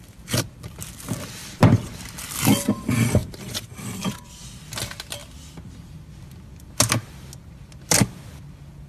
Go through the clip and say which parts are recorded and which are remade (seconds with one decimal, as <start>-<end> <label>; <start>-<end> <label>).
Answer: 0.0-1.4 recorded; 1.4-1.9 remade; 1.9-3.2 recorded; 3.2-4.4 remade; 4.4-8.9 recorded